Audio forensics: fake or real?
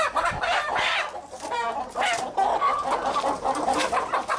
real